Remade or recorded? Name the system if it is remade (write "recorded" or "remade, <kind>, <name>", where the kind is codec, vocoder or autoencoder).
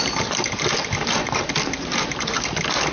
recorded